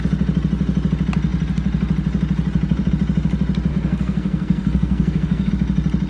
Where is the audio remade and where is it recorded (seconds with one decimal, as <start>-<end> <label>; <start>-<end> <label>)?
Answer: 0.0-3.7 recorded; 3.7-5.5 remade; 5.5-6.1 recorded